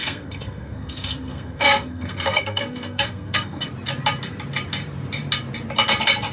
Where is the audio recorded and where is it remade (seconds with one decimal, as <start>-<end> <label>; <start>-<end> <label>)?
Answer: 0.0-3.7 remade; 3.7-6.3 recorded

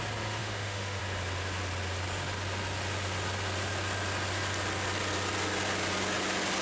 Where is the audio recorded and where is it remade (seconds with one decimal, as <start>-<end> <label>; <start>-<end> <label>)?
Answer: 0.0-0.4 recorded; 0.4-1.0 remade; 1.0-6.6 recorded

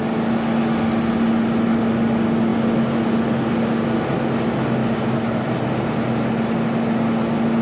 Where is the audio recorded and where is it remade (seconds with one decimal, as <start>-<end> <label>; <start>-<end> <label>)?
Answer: 0.0-7.6 recorded

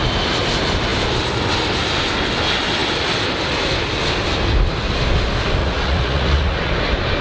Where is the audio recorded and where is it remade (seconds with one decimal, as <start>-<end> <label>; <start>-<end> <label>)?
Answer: 0.0-5.6 recorded; 5.6-6.7 remade; 6.7-7.2 recorded

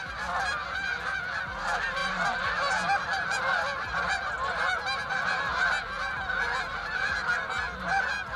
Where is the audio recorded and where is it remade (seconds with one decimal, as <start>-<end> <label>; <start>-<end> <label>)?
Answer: 0.0-2.0 remade; 2.0-5.1 recorded; 5.1-5.5 remade; 5.5-6.7 recorded; 6.7-8.4 remade